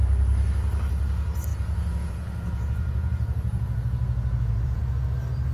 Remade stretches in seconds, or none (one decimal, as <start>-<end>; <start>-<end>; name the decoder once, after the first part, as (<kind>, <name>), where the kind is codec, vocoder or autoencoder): 1.5-4.8 (vocoder, Vocos)